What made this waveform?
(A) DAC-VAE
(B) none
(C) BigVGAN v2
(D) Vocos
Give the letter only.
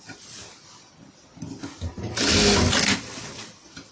B